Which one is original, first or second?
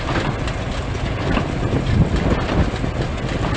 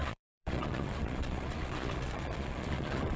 first